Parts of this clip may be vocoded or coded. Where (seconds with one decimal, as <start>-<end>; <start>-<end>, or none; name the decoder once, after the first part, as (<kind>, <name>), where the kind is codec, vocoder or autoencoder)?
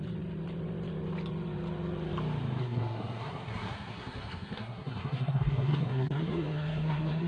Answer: 2.6-7.3 (codec, SNAC)